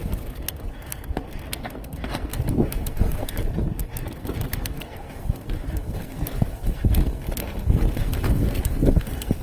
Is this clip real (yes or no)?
no